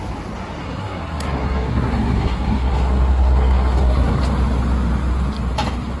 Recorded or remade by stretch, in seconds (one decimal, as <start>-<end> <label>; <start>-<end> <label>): 0.0-0.6 recorded; 0.6-4.2 remade; 4.2-6.0 recorded